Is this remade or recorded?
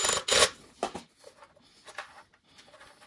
recorded